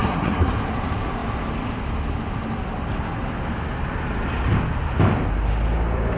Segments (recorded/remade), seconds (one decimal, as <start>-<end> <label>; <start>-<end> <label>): 0.0-0.5 remade; 0.5-6.2 recorded